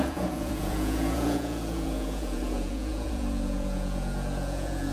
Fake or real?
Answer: fake